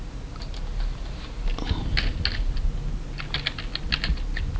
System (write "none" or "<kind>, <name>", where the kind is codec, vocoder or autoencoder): none